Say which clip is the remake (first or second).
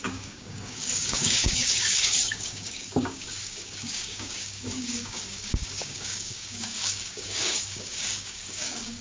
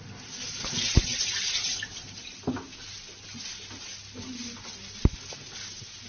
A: first